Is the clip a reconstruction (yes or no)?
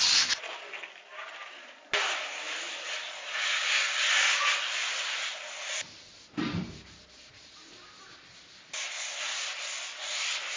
no